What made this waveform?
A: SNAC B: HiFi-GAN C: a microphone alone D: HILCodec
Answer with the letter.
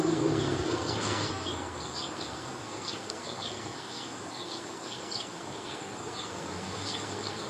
A